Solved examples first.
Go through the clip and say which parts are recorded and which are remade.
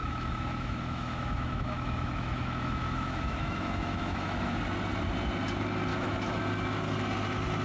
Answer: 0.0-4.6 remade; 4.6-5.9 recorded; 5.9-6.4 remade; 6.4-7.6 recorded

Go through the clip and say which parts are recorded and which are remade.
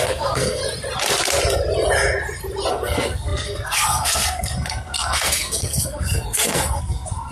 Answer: 0.0-0.6 remade; 0.6-2.7 recorded; 2.7-7.3 remade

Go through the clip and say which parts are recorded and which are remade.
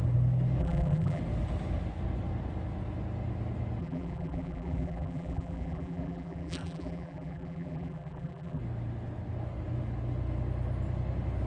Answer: 0.0-0.6 recorded; 0.6-1.2 remade; 1.2-3.8 recorded; 3.8-8.6 remade; 8.6-11.5 recorded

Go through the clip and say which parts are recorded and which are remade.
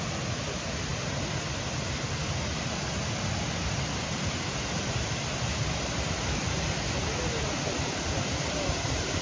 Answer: 0.0-9.2 recorded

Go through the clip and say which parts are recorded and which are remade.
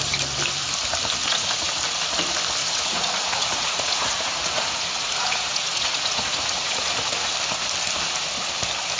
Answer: 0.0-1.2 recorded; 1.2-1.7 remade; 1.7-2.6 recorded; 2.6-7.3 remade; 7.3-9.0 recorded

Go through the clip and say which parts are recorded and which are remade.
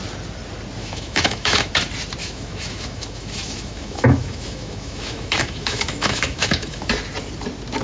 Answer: 0.0-0.8 recorded; 0.8-1.7 remade; 1.7-2.2 recorded; 2.2-6.9 remade; 6.9-7.8 recorded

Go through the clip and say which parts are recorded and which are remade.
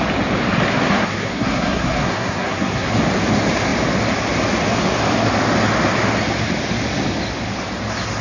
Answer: 0.0-0.7 recorded; 0.7-2.9 remade; 2.9-8.2 recorded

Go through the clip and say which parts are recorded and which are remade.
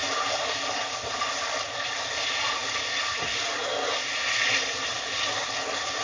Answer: 0.0-3.6 remade; 3.6-6.0 recorded